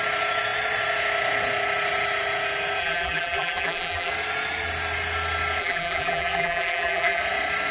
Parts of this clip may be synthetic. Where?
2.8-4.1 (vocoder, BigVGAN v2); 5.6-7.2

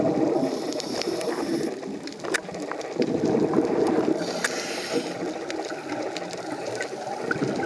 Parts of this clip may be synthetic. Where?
none

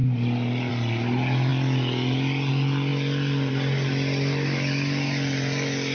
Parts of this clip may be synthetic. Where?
none

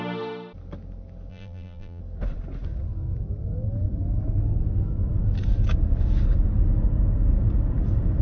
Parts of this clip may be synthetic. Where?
1.3-2.0 (vocoder, BigVGAN v2)

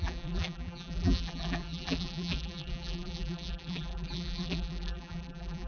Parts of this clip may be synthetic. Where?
0.0-5.7 (vocoder, BigVGAN v2)